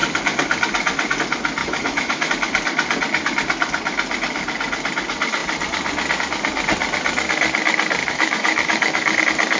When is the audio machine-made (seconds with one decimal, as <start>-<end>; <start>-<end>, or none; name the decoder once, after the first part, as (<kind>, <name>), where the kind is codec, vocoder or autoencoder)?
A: 1.6-2.3 (autoencoder, DAC-VAE); 8.0-9.2